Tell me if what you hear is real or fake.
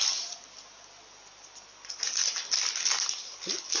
real